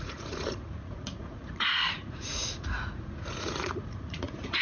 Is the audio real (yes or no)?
no